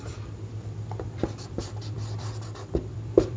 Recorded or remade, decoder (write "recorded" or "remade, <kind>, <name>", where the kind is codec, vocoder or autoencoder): remade, vocoder, BigVGAN v2